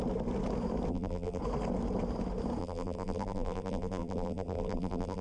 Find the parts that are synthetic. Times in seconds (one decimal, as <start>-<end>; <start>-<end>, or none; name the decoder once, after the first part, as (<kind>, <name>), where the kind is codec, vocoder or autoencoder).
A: 0.9-1.4 (vocoder, BigVGAN v2); 2.6-5.2